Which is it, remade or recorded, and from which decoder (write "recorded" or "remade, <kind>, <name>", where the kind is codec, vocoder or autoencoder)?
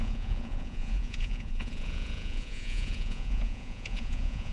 remade, vocoder, Vocos